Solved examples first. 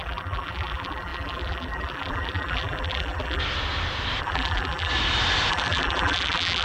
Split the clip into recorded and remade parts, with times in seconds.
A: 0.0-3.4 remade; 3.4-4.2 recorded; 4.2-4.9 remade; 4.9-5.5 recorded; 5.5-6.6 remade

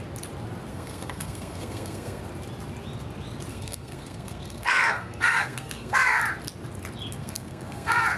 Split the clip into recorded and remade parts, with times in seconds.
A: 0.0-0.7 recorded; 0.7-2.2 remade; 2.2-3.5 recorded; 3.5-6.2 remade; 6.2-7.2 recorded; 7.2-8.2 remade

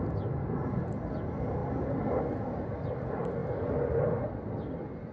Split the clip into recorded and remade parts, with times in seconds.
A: 0.0-5.1 recorded

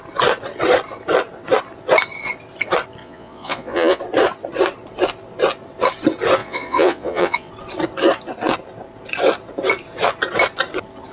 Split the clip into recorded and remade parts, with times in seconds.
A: 0.0-3.0 recorded; 3.0-4.0 remade; 4.0-6.4 recorded; 6.4-7.5 remade; 7.5-11.1 recorded

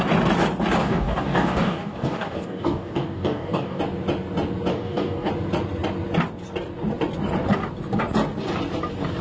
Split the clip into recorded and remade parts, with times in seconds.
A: 0.0-0.8 recorded; 0.8-3.8 remade; 3.8-4.7 recorded; 4.7-5.3 remade; 5.3-9.2 recorded

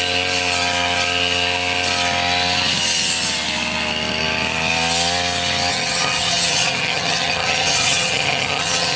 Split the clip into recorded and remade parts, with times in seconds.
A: 0.0-5.7 recorded; 5.7-9.0 remade

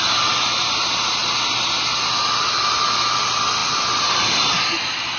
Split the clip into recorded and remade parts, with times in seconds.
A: 0.0-5.2 recorded

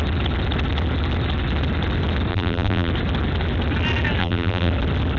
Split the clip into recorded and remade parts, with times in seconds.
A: 0.0-2.3 recorded; 2.3-2.9 remade; 2.9-4.2 recorded; 4.2-4.7 remade; 4.7-5.2 recorded